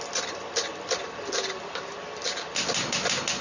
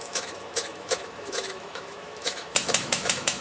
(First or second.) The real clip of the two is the first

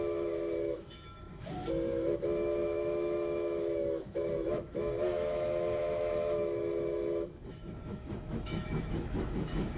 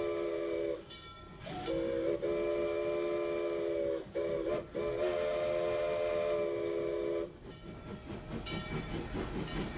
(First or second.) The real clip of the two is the second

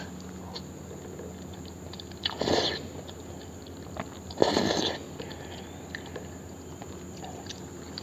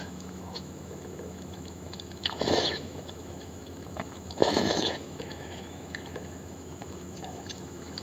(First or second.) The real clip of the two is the first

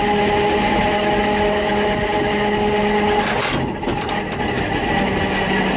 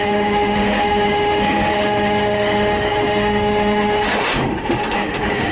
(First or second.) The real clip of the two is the first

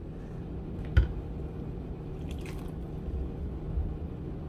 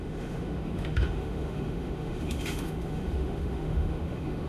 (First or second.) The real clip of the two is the first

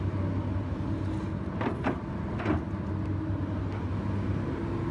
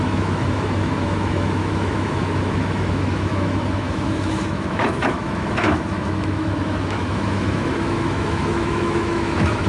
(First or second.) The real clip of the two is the first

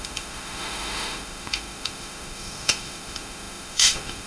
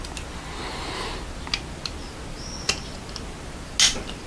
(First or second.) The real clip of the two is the second